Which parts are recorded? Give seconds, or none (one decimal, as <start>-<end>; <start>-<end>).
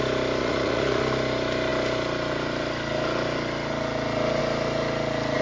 0.0-0.4; 1.0-5.4